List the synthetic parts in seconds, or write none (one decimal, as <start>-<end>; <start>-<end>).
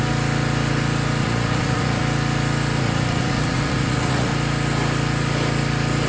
1.2-2.0; 2.8-4.3